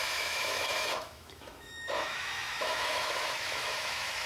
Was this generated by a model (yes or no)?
yes